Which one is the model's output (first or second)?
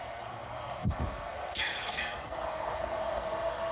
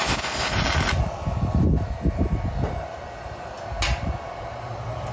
first